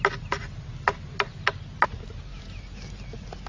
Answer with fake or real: real